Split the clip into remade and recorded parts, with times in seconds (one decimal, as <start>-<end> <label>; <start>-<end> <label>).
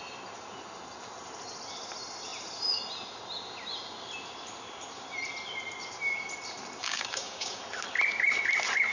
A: 0.0-6.8 recorded; 6.8-7.6 remade; 7.6-8.9 recorded